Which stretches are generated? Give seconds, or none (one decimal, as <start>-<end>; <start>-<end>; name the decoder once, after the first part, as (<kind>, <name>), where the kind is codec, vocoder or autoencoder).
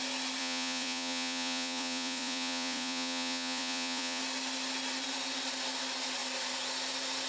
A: 0.4-4.2 (vocoder, Vocos)